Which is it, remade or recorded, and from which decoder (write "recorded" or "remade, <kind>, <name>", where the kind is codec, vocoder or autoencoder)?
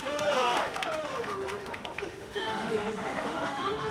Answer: remade, autoencoder, DAC-VAE